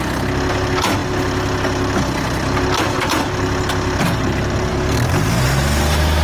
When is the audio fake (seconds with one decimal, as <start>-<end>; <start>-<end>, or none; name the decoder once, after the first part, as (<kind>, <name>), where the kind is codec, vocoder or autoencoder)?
4.7-5.4 (codec, SNAC)